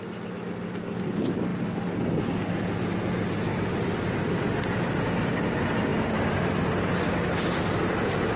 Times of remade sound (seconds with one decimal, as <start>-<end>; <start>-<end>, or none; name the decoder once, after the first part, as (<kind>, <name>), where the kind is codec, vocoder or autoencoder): none